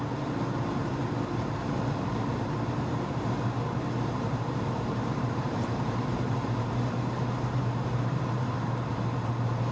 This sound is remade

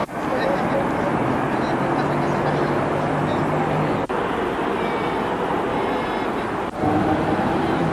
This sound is recorded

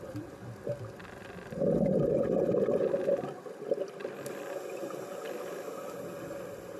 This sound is remade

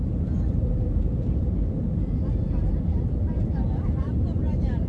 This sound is remade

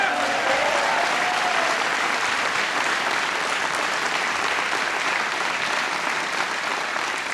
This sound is remade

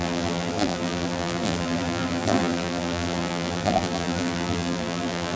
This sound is remade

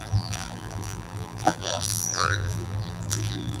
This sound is remade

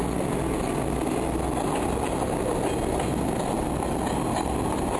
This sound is recorded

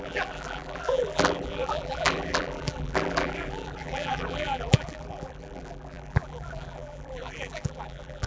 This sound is remade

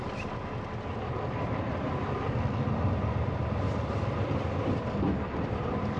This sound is remade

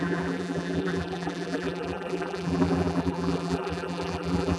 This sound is remade